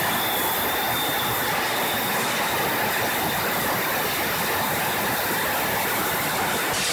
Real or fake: real